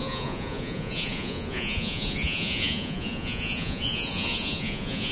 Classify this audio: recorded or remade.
remade